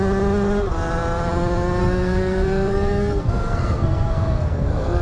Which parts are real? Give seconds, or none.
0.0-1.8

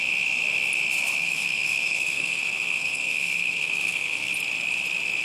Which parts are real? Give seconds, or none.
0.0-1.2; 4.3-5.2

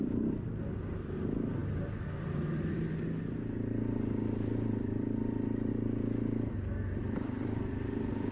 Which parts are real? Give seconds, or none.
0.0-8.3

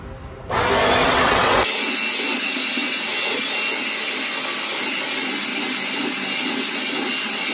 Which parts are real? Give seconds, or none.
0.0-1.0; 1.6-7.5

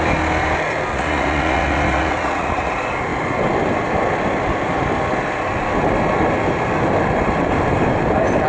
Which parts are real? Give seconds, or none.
0.0-0.9; 2.7-8.5

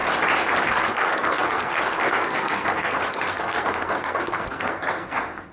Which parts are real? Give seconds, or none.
0.0-0.7

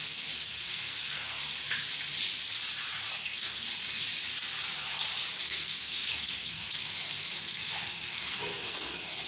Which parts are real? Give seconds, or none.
1.4-3.1; 3.7-5.4